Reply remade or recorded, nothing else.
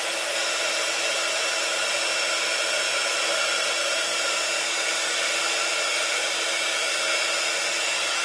recorded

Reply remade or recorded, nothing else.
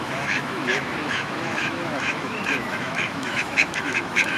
remade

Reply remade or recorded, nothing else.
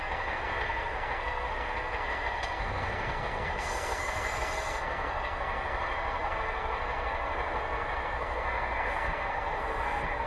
remade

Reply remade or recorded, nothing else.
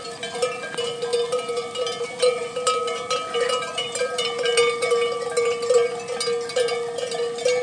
recorded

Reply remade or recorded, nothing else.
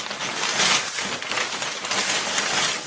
recorded